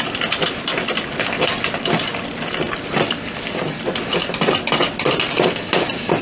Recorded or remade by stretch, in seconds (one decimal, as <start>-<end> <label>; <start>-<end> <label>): 0.0-6.2 recorded